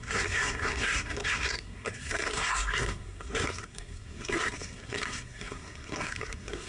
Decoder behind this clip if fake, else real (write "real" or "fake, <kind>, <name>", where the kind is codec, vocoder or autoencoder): fake, codec, SNAC